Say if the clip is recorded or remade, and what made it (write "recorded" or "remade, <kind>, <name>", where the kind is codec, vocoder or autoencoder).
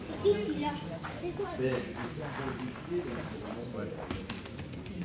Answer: recorded